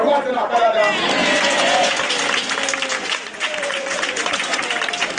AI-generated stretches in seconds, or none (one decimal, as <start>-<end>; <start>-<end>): 1.2-2.0; 3.0-4.6